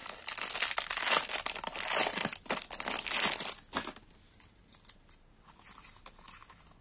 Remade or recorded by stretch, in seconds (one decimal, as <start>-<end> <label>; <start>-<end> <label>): 0.0-6.8 recorded

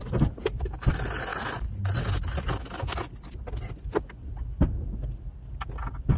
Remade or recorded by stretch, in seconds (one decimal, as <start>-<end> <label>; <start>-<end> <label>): 0.0-1.3 recorded; 1.3-2.8 remade; 2.8-6.2 recorded

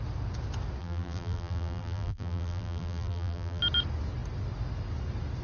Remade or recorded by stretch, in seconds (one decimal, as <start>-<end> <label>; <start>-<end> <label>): 0.0-0.8 recorded; 0.8-3.6 remade; 3.6-5.4 recorded

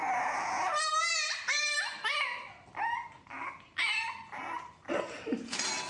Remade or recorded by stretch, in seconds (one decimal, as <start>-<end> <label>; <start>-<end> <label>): 0.0-5.9 recorded

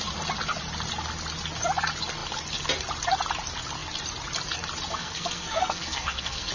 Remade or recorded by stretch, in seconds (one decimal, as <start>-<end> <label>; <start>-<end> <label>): 0.0-4.9 recorded; 4.9-6.5 remade

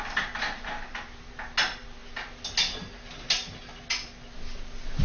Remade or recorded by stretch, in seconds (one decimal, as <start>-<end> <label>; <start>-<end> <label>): 0.0-5.0 recorded

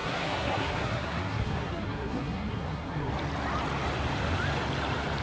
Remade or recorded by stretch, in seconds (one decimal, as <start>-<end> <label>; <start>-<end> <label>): 0.0-3.1 remade; 3.1-5.2 recorded

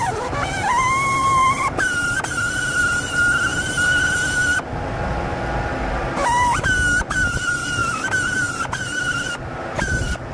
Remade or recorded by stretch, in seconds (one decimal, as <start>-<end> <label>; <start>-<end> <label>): 0.0-10.3 recorded